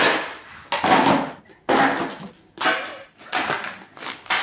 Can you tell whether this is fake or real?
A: real